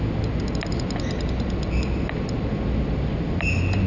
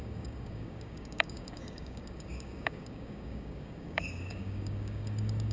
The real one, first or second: first